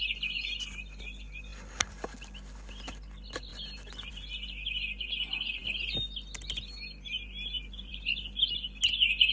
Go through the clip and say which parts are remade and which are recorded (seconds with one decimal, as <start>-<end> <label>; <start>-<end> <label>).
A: 0.0-9.3 recorded